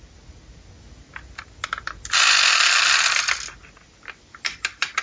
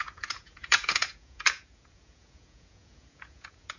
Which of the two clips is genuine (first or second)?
first